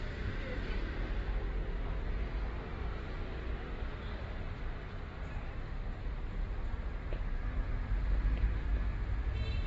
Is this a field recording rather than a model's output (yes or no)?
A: yes